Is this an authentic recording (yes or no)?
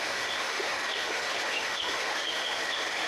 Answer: no